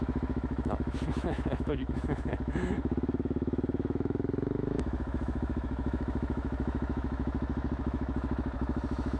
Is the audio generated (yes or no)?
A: yes